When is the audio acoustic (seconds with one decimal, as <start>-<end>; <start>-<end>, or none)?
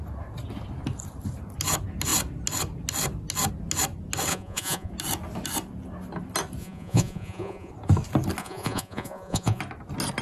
0.0-4.3; 4.9-6.6; 7.7-8.4; 9.6-10.2